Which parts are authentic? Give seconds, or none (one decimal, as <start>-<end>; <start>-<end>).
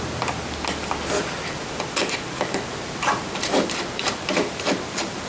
0.0-2.0